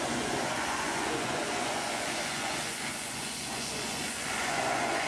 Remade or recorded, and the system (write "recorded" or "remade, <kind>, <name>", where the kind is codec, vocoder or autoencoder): remade, vocoder, Vocos